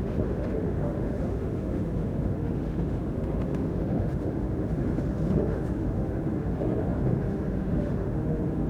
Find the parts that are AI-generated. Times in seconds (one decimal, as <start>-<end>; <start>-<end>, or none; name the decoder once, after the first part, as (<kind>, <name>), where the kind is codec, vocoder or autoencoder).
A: 0.0-8.7 (autoencoder, DAC-VAE)